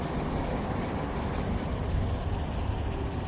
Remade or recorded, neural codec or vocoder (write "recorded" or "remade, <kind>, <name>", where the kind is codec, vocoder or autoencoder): recorded